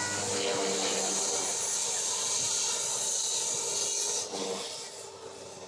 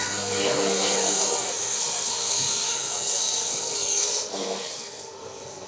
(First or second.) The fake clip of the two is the second